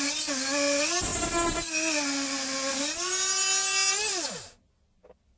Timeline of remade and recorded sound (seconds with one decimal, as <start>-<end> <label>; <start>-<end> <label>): 0.0-5.4 recorded